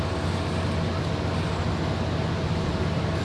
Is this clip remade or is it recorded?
recorded